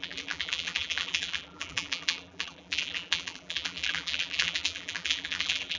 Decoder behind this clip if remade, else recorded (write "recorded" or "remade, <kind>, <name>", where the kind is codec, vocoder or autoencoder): remade, vocoder, BigVGAN v2